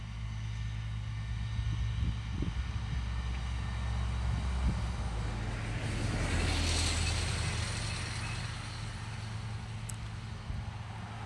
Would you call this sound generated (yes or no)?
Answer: no